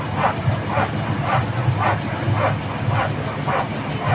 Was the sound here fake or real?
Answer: real